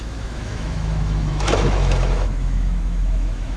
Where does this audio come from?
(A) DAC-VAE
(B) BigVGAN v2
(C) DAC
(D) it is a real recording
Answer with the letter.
A